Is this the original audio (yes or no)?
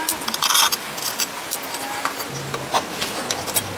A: yes